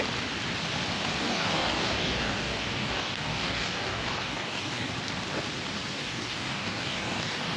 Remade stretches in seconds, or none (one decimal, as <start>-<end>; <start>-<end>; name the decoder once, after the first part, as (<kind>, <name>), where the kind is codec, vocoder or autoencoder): 1.2-4.9 (codec, DAC); 5.9-7.6